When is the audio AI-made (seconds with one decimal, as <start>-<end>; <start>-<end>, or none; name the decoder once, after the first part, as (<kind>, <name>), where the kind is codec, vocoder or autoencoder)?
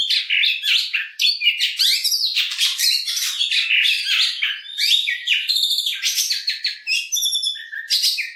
1.4-3.3 (vocoder, BigVGAN v2); 4.7-6.3